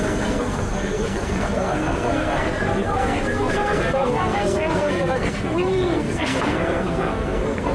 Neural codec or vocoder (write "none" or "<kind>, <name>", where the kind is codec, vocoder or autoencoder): codec, SNAC